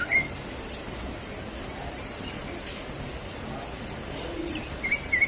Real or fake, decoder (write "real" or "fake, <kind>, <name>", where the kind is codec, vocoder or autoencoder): real